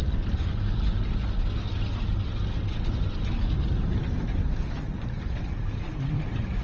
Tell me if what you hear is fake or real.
real